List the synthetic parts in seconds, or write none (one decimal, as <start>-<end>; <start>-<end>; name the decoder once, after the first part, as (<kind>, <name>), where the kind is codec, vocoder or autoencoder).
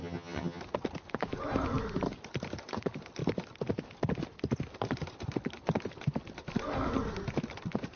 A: 0.0-0.6 (vocoder, HiFi-GAN)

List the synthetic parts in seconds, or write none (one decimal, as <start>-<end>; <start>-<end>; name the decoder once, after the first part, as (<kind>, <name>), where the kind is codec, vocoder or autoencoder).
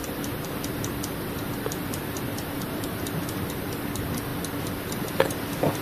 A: 0.0-4.3 (vocoder, BigVGAN v2); 4.9-5.8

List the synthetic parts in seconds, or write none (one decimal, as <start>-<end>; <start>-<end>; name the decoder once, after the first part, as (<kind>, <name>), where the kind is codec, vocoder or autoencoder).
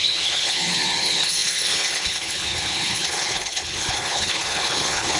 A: 0.0-5.2 (codec, HILCodec)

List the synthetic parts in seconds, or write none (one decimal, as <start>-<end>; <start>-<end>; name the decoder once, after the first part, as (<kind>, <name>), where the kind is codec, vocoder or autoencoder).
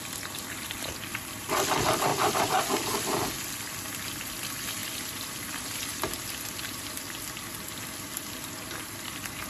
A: 2.1-3.2 (vocoder, BigVGAN v2); 4.8-7.0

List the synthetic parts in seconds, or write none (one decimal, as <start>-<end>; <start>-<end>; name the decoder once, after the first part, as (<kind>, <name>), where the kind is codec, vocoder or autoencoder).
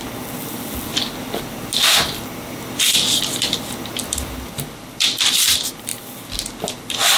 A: none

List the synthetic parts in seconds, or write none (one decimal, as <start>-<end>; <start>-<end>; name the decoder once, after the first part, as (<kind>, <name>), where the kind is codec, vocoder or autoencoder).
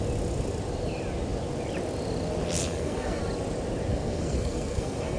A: 2.6-3.2 (codec, SNAC); 3.9-5.2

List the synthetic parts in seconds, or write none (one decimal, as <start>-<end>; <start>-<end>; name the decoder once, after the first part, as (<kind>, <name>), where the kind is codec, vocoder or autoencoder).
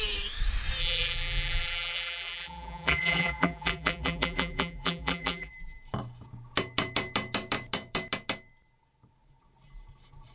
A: 0.8-5.5 (vocoder, BigVGAN v2)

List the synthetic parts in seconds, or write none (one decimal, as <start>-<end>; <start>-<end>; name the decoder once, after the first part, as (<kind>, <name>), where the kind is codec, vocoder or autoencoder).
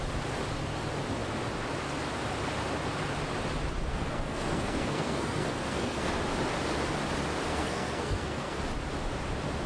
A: 3.9-6.1 (codec, SNAC); 7.5-8.6